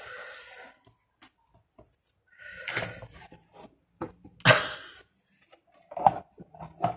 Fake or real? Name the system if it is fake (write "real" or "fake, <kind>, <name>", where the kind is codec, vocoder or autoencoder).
real